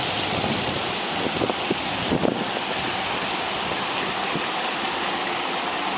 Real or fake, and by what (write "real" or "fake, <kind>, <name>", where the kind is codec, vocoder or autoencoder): real